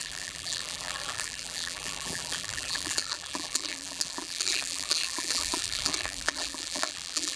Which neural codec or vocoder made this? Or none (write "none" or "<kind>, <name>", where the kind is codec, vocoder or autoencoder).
vocoder, BigVGAN v2